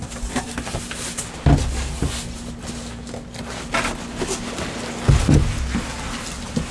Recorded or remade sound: recorded